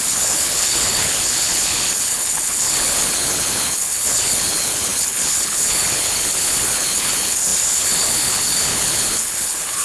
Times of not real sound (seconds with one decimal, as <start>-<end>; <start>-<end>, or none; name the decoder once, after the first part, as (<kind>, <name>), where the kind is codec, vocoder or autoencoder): 0.0-9.8 (codec, HILCodec)